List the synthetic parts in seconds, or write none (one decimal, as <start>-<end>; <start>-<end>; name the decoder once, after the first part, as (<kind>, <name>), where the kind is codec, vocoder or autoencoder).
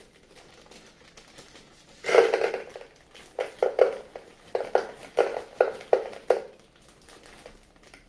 none